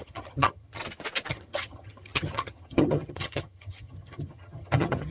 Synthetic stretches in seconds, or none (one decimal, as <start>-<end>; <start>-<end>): 0.0-0.8; 1.3-5.1